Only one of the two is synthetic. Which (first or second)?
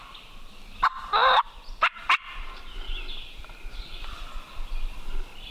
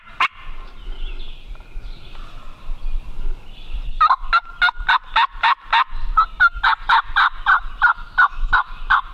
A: first